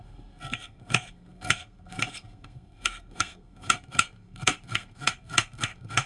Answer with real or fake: fake